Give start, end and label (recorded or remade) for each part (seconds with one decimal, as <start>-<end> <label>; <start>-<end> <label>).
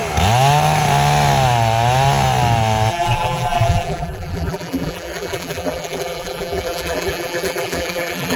0.0-2.9 recorded; 2.9-8.4 remade